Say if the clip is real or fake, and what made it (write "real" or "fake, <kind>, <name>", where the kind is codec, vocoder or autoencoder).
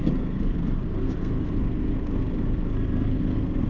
fake, codec, SNAC